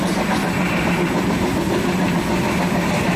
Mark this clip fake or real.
real